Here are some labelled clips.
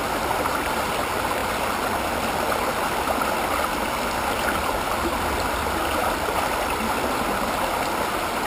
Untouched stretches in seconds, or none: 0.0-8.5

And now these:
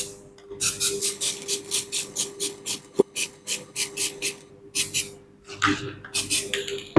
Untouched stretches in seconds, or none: 0.0-1.0; 4.5-7.0

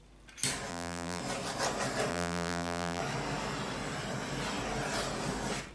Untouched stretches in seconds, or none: 0.0-0.7; 1.2-2.1; 3.0-5.7

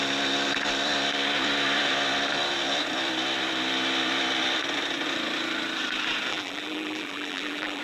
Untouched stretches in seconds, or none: 0.0-6.3